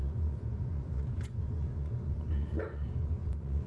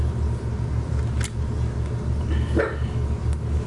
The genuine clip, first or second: second